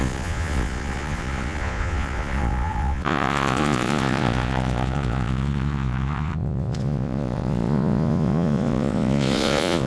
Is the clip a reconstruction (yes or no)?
yes